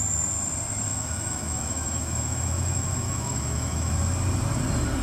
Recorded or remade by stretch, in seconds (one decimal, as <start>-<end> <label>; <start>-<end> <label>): 0.0-0.9 recorded; 0.9-3.9 remade; 3.9-5.0 recorded